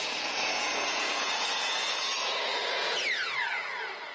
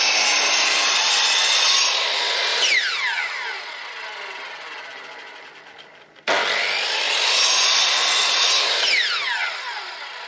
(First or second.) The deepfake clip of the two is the first